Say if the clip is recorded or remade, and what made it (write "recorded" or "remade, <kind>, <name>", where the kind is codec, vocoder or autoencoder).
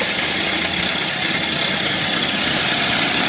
recorded